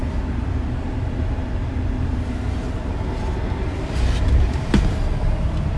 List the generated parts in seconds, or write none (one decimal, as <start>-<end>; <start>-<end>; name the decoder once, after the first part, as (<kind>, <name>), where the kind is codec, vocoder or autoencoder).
none